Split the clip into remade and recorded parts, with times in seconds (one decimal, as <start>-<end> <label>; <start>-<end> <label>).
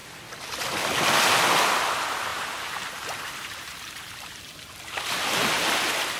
0.0-2.3 recorded; 2.3-4.7 remade; 4.7-6.2 recorded